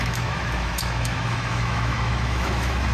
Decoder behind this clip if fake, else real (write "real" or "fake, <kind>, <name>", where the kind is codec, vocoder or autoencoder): fake, autoencoder, DAC-VAE